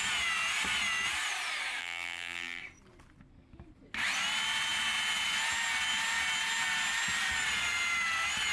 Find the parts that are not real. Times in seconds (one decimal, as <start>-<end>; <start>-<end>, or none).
1.8-2.6